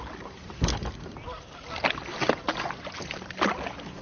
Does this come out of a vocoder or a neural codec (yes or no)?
no